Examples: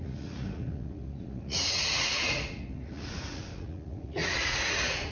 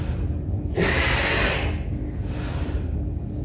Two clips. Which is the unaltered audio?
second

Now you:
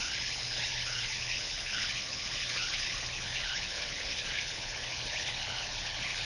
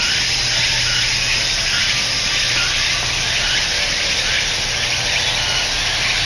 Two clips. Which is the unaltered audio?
second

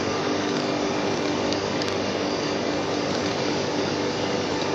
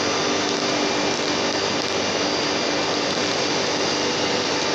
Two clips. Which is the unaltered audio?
second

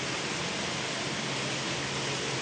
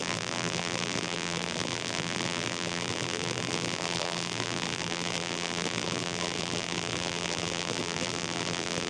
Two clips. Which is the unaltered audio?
first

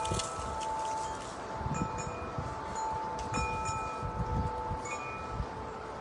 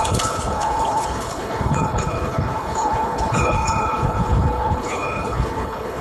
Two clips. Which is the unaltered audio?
first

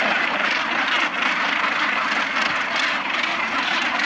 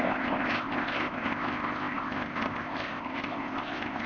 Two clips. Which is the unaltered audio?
first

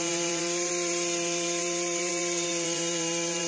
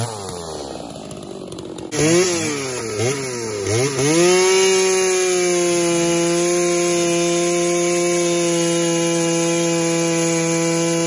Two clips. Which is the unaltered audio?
second